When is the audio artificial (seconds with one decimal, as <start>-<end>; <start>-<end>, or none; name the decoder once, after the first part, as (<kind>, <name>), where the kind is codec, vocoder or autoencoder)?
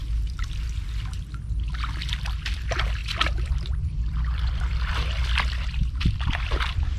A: 3.0-6.6 (vocoder, BigVGAN v2)